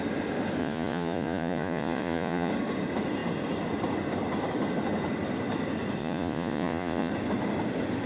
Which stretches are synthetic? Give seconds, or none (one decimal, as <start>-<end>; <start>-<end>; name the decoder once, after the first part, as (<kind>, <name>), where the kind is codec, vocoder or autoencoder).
0.6-2.5 (vocoder, Vocos); 6.0-7.1